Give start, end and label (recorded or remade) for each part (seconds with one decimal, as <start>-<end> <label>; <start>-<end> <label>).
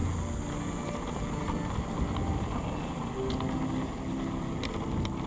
0.0-5.3 recorded